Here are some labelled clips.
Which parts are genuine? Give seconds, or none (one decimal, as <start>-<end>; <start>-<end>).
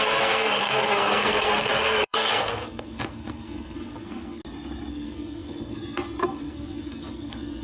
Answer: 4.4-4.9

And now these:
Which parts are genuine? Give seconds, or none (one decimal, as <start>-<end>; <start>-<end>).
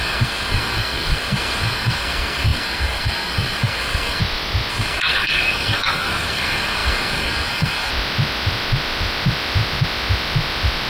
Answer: 4.2-4.7; 7.9-10.9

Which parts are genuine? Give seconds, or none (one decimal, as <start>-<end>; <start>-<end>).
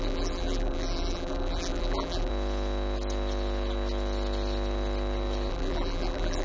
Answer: 2.3-5.5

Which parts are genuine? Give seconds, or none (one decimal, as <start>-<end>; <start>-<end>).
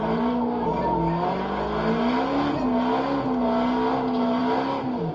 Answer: 0.0-5.1